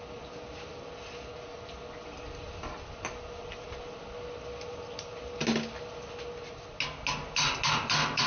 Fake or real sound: real